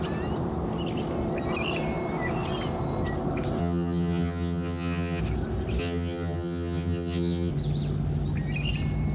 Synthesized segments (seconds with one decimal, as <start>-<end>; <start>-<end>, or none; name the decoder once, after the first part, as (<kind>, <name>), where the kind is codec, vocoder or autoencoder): 3.6-5.2 (vocoder, HiFi-GAN); 5.8-7.5